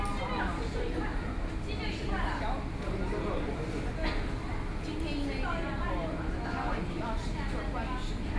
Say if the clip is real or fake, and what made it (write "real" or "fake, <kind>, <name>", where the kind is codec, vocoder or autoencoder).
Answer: real